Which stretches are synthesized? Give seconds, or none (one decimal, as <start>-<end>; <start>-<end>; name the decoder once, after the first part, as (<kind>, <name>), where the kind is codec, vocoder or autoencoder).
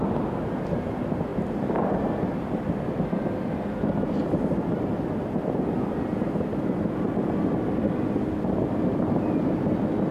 none